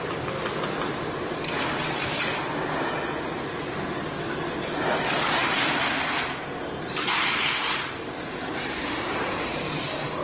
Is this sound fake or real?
real